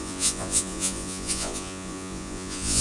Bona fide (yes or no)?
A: no